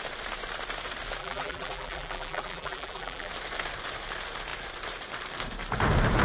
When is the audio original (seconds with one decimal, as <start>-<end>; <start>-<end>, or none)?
0.0-1.2; 3.3-6.2

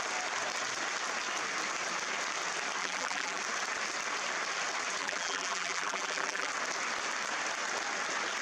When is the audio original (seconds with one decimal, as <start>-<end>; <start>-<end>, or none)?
0.0-2.8; 3.4-5.0; 6.5-8.4

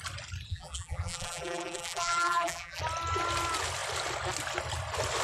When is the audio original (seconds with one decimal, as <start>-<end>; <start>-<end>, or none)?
0.0-0.5; 2.8-5.2

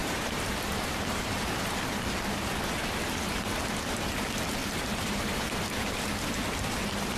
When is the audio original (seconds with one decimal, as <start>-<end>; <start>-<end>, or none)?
1.6-4.6; 6.3-7.2